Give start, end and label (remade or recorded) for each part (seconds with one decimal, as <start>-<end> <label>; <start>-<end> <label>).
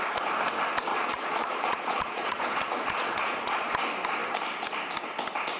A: 0.0-0.9 recorded; 0.9-3.7 remade; 3.7-5.6 recorded